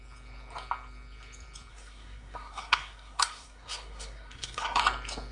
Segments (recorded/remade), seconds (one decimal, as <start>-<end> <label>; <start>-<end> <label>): 0.0-1.7 recorded; 1.7-4.8 remade; 4.8-5.3 recorded